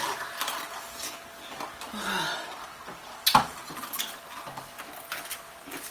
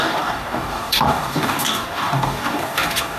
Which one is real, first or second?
first